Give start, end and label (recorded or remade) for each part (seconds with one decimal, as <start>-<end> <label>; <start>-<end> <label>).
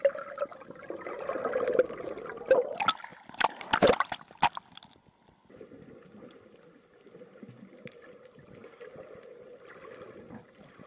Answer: 0.0-10.9 recorded